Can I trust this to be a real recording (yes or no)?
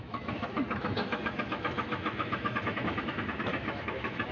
no